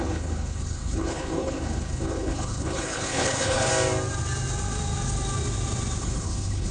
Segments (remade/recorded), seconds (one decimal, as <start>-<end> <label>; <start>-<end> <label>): 0.0-3.7 remade; 3.7-6.0 recorded; 6.0-6.7 remade

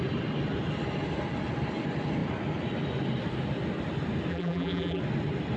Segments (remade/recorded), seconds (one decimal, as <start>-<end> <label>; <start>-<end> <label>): 0.0-4.3 recorded; 4.3-5.0 remade; 5.0-5.6 recorded

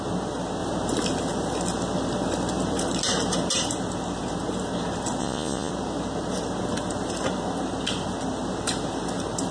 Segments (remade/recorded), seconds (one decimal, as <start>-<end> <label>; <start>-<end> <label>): 0.0-5.2 recorded; 5.2-5.7 remade; 5.7-9.5 recorded

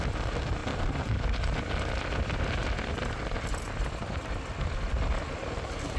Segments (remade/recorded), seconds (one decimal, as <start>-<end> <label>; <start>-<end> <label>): 0.0-0.6 recorded; 0.6-1.4 remade; 1.4-6.0 recorded

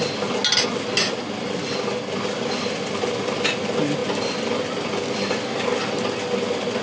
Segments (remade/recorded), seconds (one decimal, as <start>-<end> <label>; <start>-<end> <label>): 0.0-6.8 recorded

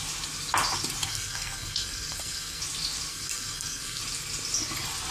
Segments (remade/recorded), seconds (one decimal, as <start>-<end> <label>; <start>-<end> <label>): 0.0-1.1 recorded; 1.1-2.6 remade; 2.6-3.1 recorded; 3.1-4.0 remade; 4.0-5.1 recorded